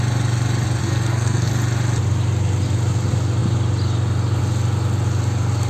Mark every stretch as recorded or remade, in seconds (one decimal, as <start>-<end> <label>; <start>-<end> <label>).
0.0-0.8 recorded; 0.8-1.5 remade; 1.5-5.7 recorded